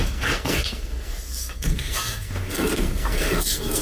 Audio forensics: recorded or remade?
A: remade